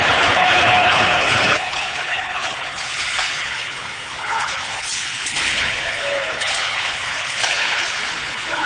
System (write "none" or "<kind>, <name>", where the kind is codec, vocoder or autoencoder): codec, HILCodec